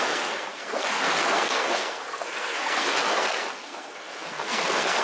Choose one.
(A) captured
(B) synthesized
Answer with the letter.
B